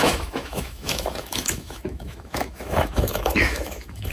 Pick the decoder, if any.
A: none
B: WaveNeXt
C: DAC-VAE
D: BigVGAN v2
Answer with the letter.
C